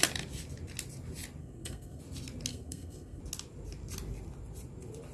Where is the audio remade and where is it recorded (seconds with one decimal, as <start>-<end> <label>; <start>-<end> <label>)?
0.0-1.4 recorded; 1.4-2.0 remade; 2.0-2.5 recorded; 2.5-3.2 remade; 3.2-5.1 recorded